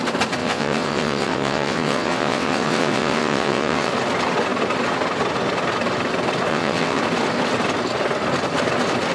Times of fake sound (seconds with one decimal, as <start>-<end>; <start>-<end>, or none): 0.4-3.9; 6.5-7.0